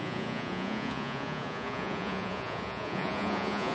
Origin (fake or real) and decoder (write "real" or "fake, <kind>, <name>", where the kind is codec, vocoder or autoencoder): fake, vocoder, Vocos